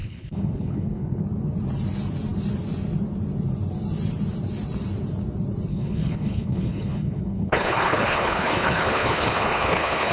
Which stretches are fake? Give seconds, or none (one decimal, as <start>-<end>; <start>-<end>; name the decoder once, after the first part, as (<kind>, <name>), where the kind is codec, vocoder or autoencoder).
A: 0.0-1.2 (codec, HILCodec); 5.7-10.1